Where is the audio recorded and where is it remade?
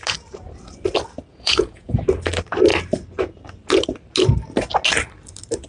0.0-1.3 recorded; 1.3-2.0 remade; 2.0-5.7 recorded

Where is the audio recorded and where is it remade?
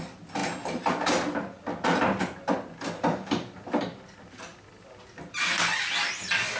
0.0-6.6 recorded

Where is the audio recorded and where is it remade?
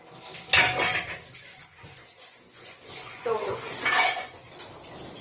0.0-1.4 recorded; 1.4-4.5 remade; 4.5-5.2 recorded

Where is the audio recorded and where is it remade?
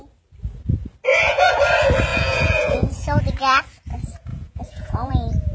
0.0-1.1 recorded; 1.1-1.6 remade; 1.6-2.1 recorded; 2.1-3.2 remade; 3.2-4.3 recorded; 4.3-5.1 remade; 5.1-5.5 recorded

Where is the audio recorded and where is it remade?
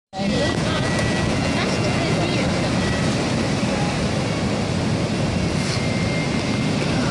0.0-0.5 recorded; 0.5-2.2 remade; 2.2-7.1 recorded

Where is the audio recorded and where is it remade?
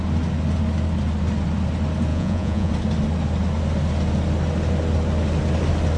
0.0-2.1 recorded; 2.1-2.7 remade; 2.7-6.0 recorded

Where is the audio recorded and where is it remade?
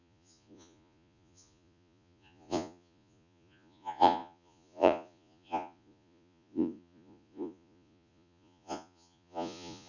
0.0-9.9 remade